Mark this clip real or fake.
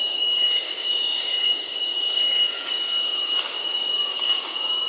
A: fake